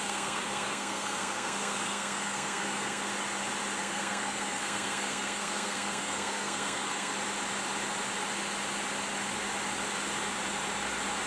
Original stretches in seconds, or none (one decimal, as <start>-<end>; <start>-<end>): 3.1-3.8; 7.1-11.3